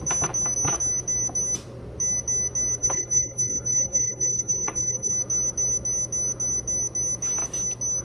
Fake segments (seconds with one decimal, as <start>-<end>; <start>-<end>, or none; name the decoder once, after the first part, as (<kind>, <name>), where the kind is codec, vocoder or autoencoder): 2.8-5.1 (codec, HILCodec)